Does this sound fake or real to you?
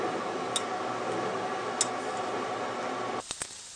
real